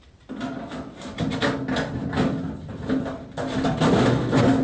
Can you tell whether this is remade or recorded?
recorded